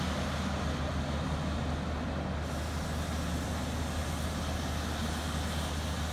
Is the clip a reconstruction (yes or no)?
no